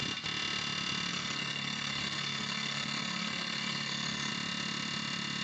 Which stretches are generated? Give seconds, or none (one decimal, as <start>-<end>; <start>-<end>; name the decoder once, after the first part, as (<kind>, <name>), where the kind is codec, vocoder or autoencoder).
1.1-4.3 (codec, SNAC)